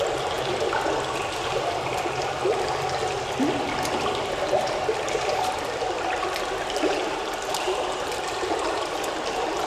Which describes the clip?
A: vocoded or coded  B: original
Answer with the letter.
B